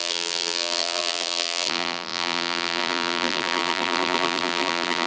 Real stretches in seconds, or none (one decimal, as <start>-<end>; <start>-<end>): none